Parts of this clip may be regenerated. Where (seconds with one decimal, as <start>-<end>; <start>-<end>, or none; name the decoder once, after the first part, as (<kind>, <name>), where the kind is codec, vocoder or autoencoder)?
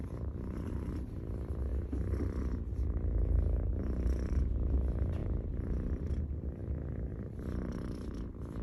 0.0-1.7 (vocoder, BigVGAN v2); 3.8-8.6